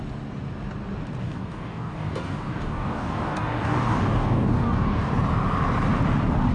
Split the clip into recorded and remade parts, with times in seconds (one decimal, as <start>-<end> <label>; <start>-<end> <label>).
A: 0.0-1.2 recorded; 1.2-5.1 remade; 5.1-6.5 recorded